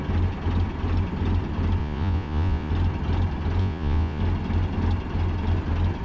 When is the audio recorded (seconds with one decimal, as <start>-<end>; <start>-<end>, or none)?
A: 0.0-1.8; 2.7-3.6; 4.2-6.0